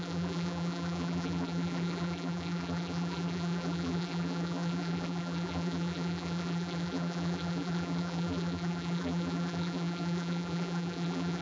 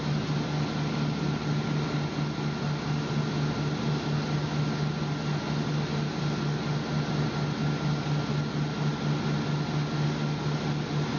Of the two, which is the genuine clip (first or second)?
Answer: second